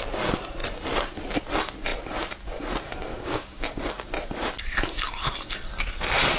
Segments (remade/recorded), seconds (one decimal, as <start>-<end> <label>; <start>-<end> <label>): 0.0-3.1 recorded; 3.1-3.8 remade; 3.8-6.4 recorded